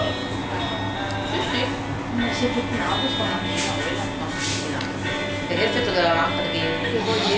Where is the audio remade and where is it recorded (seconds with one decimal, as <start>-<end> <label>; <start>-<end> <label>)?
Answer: 0.0-5.0 recorded; 5.0-5.5 remade; 5.5-7.4 recorded